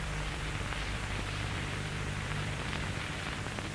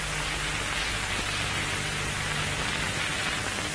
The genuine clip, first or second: second